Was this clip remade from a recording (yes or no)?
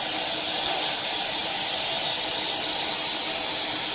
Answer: no